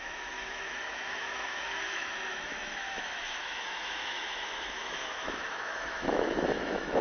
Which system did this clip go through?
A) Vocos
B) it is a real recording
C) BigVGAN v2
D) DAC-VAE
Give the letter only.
D